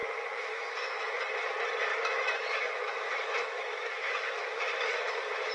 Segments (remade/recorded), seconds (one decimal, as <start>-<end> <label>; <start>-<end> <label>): 0.0-1.2 remade; 1.2-1.9 recorded; 1.9-5.5 remade